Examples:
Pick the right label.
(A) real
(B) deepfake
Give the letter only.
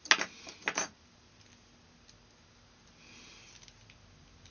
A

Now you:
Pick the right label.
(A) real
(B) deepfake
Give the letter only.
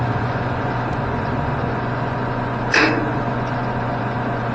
B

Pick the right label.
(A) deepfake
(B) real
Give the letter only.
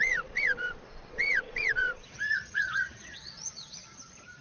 A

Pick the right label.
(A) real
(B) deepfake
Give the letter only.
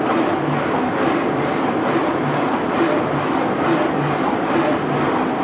A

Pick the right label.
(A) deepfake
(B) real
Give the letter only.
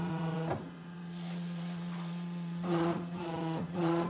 A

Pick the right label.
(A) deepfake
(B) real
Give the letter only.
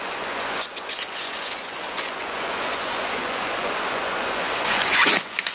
A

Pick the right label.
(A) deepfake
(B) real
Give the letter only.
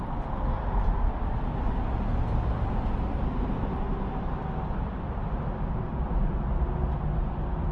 B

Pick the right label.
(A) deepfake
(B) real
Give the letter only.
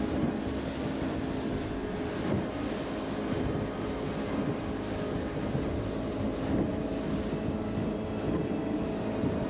B